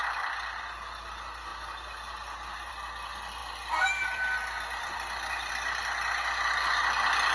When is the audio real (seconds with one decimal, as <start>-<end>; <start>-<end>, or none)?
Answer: 0.0-1.5; 2.7-3.4; 5.5-7.3